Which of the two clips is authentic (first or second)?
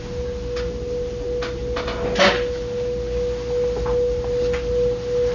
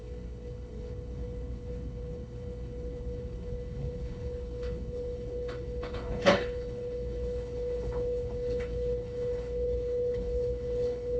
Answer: first